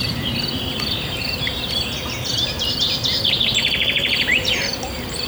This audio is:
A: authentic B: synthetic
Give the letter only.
B